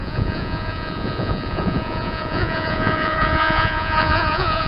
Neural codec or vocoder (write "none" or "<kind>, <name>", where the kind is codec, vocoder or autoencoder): vocoder, Vocos